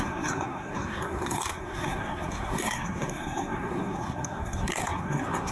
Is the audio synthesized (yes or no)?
yes